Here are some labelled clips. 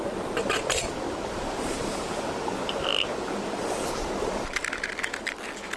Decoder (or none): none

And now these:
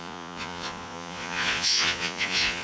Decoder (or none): vocoder, Vocos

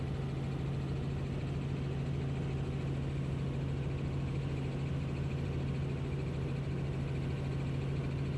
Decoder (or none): none